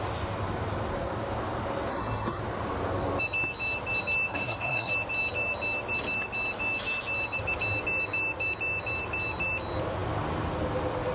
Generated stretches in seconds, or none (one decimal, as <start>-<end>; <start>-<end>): 1.9-2.4; 4.3-4.9